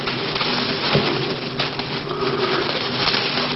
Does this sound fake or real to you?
real